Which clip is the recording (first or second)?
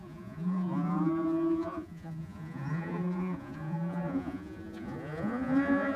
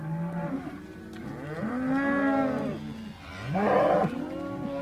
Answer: second